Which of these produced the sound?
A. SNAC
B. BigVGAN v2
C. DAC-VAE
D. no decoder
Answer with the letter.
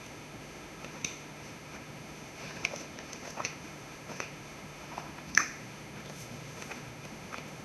C